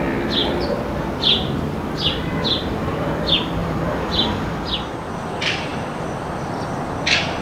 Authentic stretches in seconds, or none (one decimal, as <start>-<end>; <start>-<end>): 0.0-0.4; 2.2-3.6; 5.1-5.7; 6.5-7.4